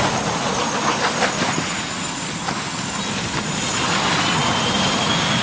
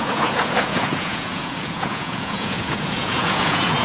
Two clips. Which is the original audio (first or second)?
first